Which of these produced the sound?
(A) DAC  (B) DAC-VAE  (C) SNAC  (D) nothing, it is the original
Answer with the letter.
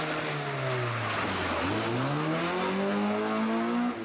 D